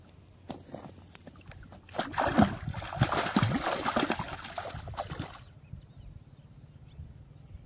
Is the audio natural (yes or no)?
yes